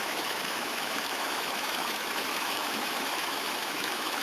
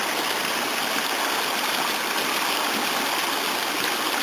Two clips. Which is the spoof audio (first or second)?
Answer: first